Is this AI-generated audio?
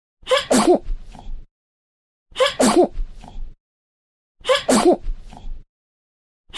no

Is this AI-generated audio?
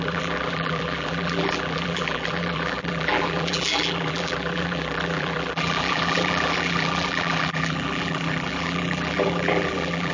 yes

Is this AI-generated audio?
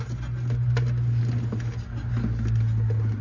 no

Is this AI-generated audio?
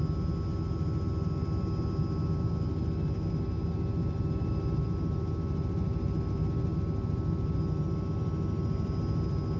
no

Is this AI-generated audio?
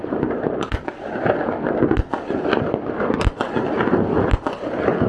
no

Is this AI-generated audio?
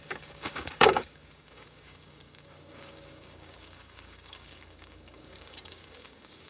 yes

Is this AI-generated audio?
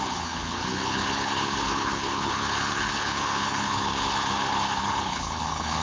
yes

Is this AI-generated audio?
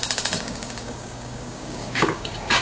yes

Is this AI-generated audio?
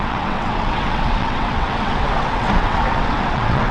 yes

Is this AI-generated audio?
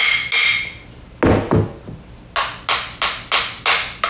no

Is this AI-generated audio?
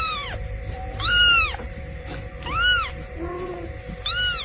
no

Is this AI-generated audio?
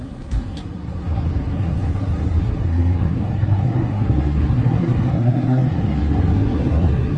yes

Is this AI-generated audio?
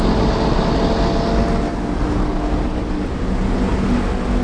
no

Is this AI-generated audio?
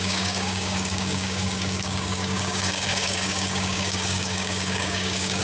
yes